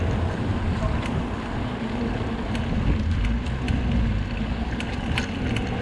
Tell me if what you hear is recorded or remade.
recorded